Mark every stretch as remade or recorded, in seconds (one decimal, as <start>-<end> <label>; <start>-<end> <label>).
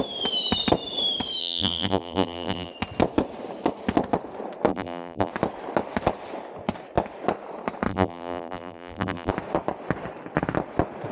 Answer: 0.0-1.4 recorded; 1.4-2.7 remade; 2.7-4.7 recorded; 4.7-5.3 remade; 5.3-7.9 recorded; 7.9-9.3 remade; 9.3-11.1 recorded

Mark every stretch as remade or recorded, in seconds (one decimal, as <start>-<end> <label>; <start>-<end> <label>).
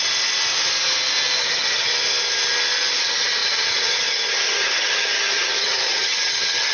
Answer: 0.0-1.4 recorded; 1.4-1.9 remade; 1.9-3.0 recorded; 3.0-6.7 remade